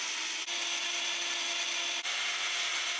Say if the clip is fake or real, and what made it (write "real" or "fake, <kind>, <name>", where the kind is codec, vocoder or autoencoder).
real